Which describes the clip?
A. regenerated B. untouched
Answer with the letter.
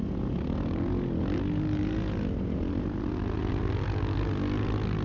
B